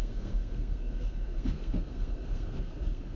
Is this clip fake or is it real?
fake